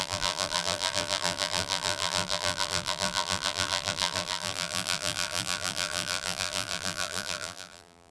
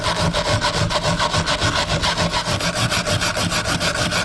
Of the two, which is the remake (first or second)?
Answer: first